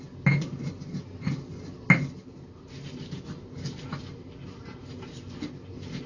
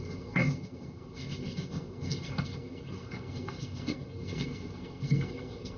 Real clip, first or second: first